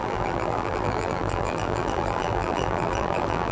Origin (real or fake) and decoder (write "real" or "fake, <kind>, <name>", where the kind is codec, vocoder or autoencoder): fake, vocoder, BigVGAN v2